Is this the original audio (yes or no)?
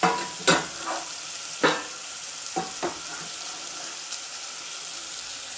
yes